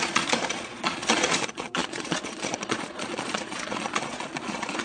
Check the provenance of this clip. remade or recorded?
remade